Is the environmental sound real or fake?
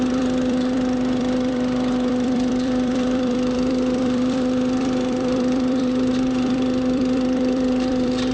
fake